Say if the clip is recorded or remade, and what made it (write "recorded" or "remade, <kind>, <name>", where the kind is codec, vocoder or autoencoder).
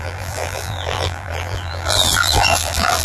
remade, vocoder, BigVGAN v2